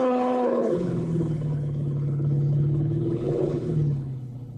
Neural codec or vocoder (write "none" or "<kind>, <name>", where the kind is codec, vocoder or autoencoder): codec, HILCodec